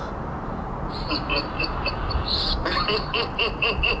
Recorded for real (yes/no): no